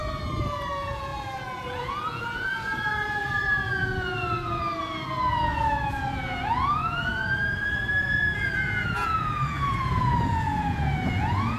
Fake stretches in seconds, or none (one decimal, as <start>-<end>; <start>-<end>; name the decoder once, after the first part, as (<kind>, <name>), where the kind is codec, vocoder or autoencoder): 0.0-11.6 (vocoder, Vocos)